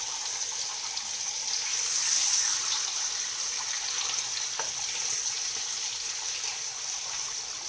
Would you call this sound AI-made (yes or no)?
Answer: no